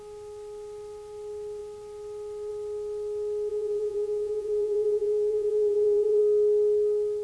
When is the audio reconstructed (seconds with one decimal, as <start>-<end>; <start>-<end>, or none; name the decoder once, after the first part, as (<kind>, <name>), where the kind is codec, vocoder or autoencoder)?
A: 3.5-6.2 (vocoder, Vocos)